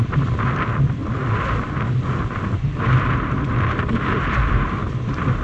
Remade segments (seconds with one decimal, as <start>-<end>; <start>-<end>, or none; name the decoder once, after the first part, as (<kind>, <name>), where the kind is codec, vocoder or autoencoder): 0.0-1.0 (vocoder, BigVGAN v2); 4.2-5.4